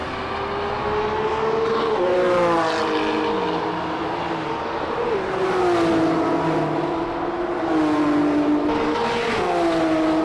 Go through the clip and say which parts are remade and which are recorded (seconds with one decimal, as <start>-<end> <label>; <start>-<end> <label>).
0.0-10.2 recorded